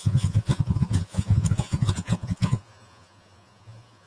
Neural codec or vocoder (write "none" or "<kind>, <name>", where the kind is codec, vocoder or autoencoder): vocoder, Vocos